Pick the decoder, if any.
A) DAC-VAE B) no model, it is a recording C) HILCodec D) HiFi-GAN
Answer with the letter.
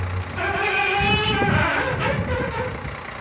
B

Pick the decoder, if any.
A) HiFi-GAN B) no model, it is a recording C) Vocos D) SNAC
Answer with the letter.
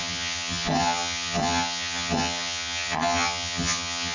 A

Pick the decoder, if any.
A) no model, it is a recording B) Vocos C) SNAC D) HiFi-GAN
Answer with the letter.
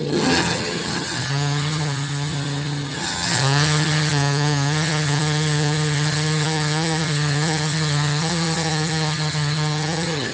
D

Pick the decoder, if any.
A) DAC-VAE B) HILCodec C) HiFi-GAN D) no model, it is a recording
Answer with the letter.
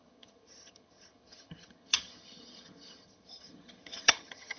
C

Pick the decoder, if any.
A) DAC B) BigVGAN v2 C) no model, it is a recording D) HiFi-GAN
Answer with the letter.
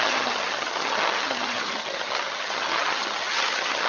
D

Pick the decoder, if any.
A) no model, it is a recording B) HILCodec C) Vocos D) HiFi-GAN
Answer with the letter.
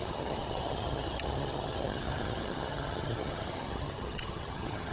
D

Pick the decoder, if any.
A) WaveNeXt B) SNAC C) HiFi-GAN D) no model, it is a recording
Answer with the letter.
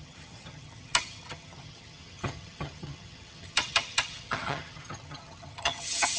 C